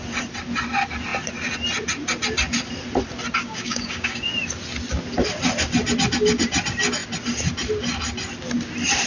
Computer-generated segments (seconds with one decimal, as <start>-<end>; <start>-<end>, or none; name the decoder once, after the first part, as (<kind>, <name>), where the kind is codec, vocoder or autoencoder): 3.4-4.3 (codec, DAC)